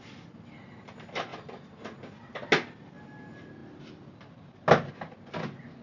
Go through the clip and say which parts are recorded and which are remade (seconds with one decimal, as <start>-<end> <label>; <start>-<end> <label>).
0.0-5.8 recorded